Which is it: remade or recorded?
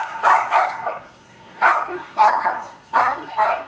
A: remade